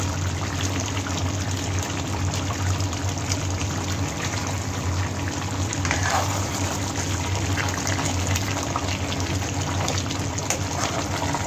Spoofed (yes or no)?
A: no